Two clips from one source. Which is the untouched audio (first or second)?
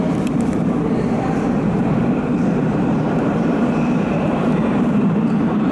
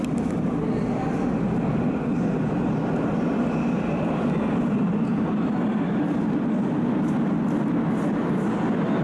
second